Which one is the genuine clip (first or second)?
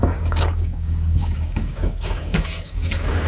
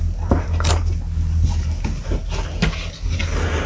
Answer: second